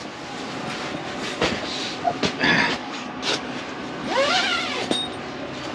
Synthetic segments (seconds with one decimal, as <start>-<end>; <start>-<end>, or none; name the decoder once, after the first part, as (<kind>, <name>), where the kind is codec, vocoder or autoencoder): 2.8-3.6 (codec, DAC)